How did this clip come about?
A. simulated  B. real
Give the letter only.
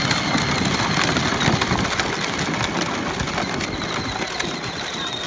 B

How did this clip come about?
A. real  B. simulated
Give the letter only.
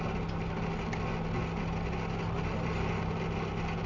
A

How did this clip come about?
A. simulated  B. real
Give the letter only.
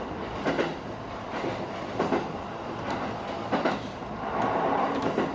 B